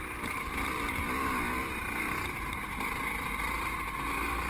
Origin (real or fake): real